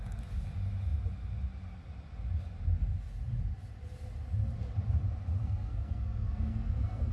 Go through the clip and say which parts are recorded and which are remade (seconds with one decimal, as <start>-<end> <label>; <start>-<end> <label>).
0.0-5.4 recorded; 5.4-7.1 remade